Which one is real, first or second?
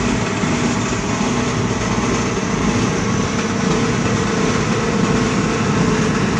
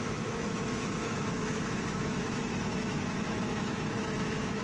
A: first